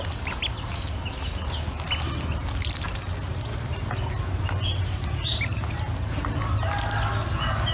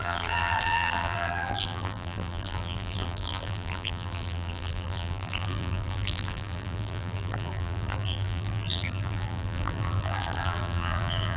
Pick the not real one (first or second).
second